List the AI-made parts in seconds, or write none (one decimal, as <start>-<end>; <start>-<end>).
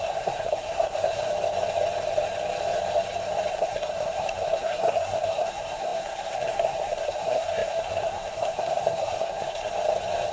0.0-1.3; 3.5-9.7